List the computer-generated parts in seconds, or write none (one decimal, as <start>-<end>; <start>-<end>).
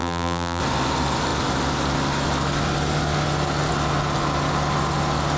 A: 0.0-0.6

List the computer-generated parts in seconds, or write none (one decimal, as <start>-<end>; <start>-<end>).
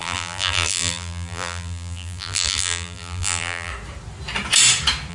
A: 0.0-3.7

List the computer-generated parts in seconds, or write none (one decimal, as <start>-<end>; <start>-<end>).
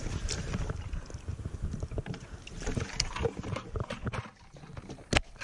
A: 1.3-4.5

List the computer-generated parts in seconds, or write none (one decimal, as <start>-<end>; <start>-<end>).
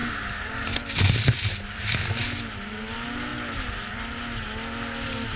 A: 0.0-1.8; 3.3-4.2